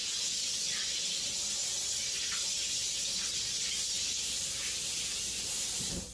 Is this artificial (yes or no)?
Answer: no